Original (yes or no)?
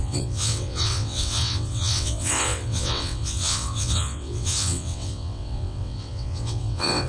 no